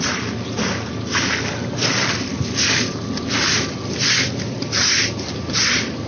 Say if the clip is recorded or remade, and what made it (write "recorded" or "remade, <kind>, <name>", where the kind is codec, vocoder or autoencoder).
recorded